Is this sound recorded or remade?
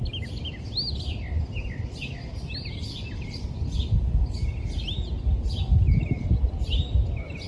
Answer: recorded